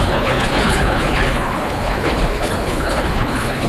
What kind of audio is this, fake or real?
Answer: fake